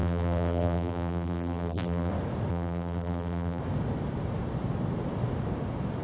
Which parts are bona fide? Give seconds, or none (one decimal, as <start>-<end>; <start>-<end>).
2.1-2.5; 3.6-6.0

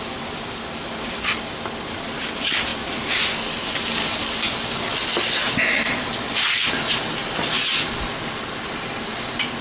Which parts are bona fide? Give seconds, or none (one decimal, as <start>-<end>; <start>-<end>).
0.0-9.6

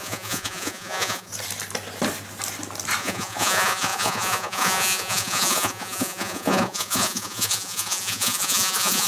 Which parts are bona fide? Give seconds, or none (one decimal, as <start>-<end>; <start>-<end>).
1.3-3.0